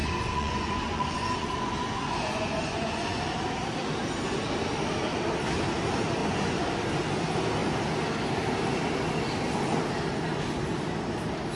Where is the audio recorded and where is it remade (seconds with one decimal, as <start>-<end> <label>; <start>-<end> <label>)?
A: 0.0-3.2 remade; 3.2-6.2 recorded; 6.2-6.7 remade; 6.7-11.6 recorded